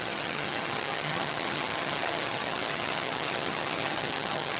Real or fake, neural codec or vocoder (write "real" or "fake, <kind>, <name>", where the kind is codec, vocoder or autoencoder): fake, vocoder, HiFi-GAN